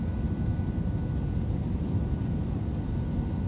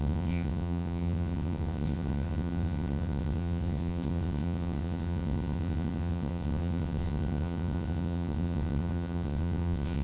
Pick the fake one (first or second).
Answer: second